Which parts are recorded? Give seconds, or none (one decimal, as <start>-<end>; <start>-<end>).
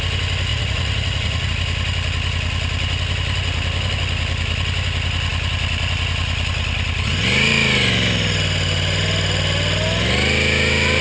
0.0-0.5; 1.5-11.0